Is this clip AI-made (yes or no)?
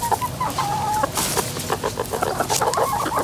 no